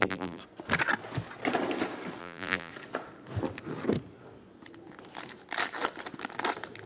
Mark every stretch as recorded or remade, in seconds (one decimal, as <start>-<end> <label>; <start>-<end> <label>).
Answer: 0.0-0.4 remade; 0.4-2.2 recorded; 2.2-2.7 remade; 2.7-6.9 recorded